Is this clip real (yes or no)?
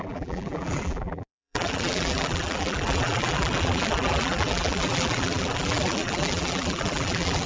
no